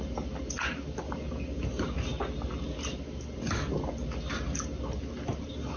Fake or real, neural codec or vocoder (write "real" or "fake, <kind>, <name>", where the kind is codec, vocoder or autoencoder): real